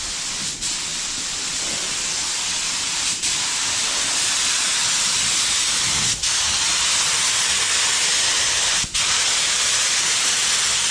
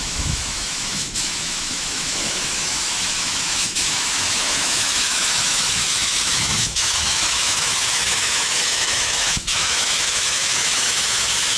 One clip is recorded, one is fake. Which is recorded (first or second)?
first